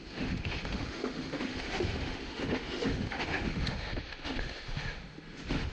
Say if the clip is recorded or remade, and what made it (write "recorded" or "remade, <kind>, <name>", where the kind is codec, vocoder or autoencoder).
remade, autoencoder, DAC-VAE